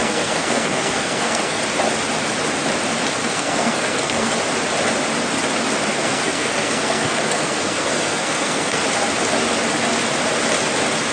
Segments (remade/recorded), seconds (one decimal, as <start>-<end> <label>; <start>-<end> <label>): 0.0-1.6 remade; 1.6-3.2 recorded; 3.2-4.3 remade; 4.3-5.9 recorded; 5.9-8.8 remade; 8.8-11.1 recorded